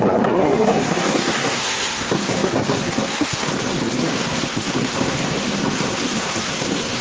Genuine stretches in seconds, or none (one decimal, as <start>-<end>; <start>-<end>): none

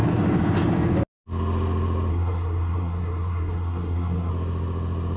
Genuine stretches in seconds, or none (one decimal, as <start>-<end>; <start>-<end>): 0.0-2.1; 4.3-5.2

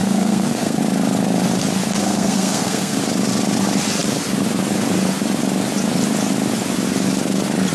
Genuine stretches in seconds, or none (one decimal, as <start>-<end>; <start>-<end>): 0.8-2.0; 3.0-7.7

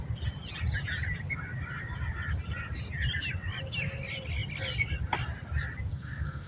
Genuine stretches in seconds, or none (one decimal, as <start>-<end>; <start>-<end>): 0.0-5.9

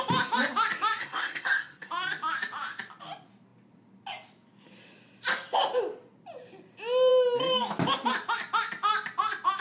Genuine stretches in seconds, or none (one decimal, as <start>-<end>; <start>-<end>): 0.0-1.0; 1.9-9.6

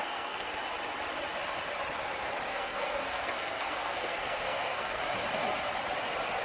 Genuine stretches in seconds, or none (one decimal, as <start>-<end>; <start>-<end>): 0.5-2.5; 5.0-6.4